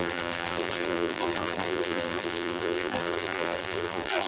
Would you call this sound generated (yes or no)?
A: yes